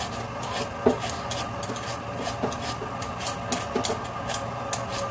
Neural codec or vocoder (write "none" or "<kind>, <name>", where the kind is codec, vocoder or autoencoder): none